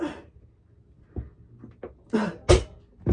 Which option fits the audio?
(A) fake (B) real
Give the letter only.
B